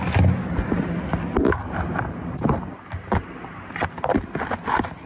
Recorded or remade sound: recorded